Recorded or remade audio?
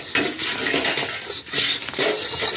recorded